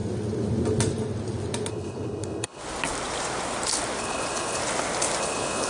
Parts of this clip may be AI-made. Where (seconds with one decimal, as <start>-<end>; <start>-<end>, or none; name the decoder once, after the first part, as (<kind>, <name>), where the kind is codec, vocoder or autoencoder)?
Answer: 1.7-2.6 (codec, HILCodec); 4.0-4.6; 5.2-5.7